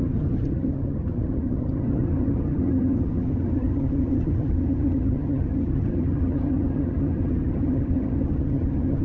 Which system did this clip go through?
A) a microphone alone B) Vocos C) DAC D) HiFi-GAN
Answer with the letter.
D